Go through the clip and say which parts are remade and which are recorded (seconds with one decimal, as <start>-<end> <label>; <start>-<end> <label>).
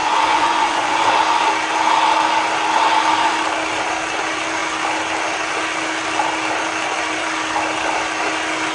0.0-1.1 remade; 1.1-8.7 recorded